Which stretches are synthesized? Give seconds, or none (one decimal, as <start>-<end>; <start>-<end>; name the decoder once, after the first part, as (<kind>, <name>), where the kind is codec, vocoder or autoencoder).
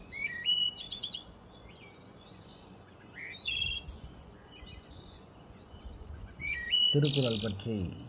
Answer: 0.0-6.9 (vocoder, Vocos)